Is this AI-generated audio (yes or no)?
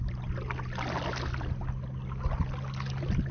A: no